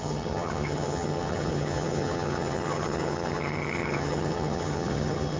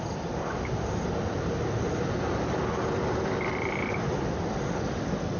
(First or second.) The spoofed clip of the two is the first